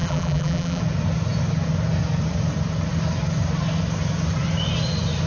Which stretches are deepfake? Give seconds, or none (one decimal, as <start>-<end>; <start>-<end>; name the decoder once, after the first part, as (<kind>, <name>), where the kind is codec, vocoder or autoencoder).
0.0-0.8 (vocoder, BigVGAN v2)